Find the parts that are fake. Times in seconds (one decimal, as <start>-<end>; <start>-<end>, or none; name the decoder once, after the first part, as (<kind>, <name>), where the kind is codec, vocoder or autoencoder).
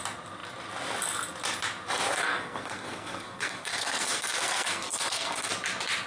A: 2.3-5.5 (codec, SNAC)